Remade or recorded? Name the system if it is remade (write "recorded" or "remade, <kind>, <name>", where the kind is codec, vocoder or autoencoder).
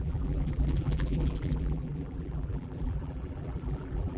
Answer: remade, vocoder, BigVGAN v2